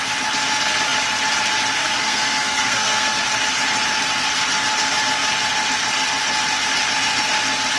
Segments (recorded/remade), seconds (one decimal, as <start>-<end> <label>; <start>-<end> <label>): 0.0-1.8 recorded; 1.8-3.2 remade; 3.2-7.8 recorded